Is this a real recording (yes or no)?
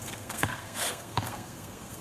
no